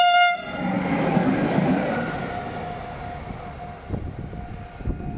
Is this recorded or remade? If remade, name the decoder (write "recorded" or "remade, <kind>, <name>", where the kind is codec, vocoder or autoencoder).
recorded